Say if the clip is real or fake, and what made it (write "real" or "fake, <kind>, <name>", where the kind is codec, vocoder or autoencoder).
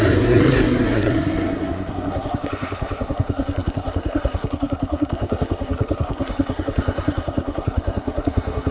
fake, codec, SNAC